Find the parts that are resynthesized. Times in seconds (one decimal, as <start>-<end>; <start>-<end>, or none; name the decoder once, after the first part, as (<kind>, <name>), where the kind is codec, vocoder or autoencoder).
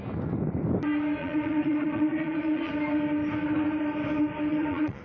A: 1.2-2.7 (vocoder, Vocos); 4.5-5.0